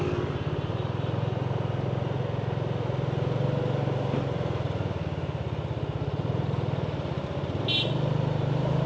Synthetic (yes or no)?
no